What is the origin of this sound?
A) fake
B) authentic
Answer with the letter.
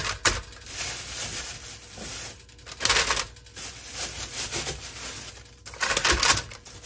B